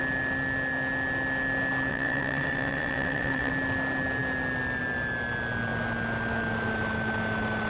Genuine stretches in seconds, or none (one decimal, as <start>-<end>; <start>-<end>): 0.0-1.9; 3.5-7.7